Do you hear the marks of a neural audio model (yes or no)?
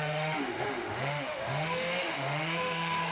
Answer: yes